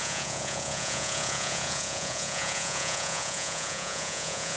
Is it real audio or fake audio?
fake